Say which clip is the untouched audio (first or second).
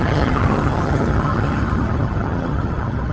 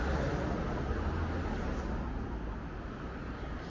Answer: second